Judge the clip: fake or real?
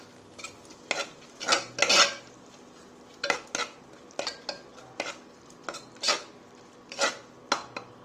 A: real